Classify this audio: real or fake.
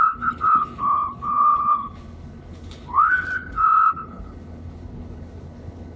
fake